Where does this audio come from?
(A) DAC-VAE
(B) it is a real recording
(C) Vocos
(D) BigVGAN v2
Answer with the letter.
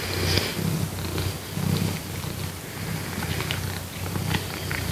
B